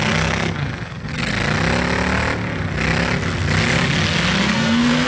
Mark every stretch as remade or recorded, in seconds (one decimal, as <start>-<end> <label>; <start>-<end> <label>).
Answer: 0.0-1.3 remade; 1.3-4.4 recorded; 4.4-5.1 remade